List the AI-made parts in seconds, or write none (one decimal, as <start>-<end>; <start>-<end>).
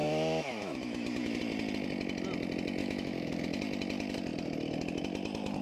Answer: 0.0-1.4; 2.8-3.6